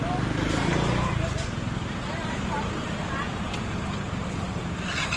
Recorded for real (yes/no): no